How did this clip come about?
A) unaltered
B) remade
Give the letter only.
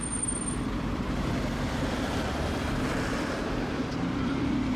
B